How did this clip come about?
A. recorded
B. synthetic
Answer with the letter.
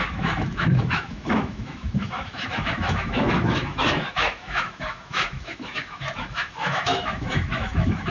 B